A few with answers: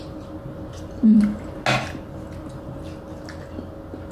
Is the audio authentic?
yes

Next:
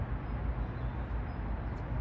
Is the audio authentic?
yes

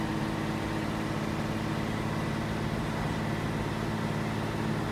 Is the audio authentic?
yes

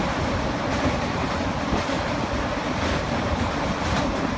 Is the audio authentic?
no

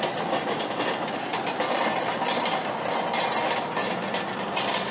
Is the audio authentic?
no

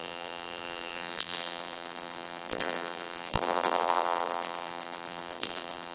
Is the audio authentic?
no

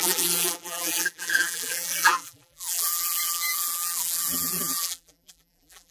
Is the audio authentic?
no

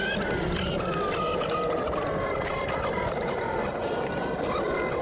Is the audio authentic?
no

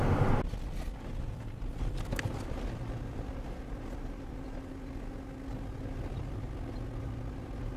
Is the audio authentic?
yes